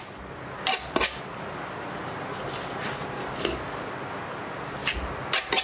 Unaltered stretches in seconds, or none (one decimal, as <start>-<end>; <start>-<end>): 0.0-5.6